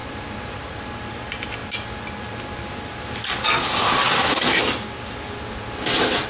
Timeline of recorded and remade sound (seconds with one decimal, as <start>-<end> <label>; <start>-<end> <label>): 0.0-0.8 remade; 0.8-6.3 recorded